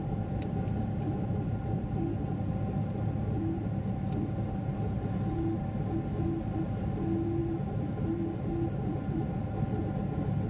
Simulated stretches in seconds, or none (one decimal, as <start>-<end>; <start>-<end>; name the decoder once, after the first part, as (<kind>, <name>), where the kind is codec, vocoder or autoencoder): none